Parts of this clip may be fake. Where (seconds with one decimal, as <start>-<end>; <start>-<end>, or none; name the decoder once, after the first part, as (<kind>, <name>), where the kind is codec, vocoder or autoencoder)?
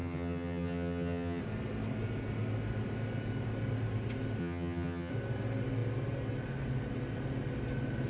0.0-1.4 (vocoder, HiFi-GAN); 4.4-5.1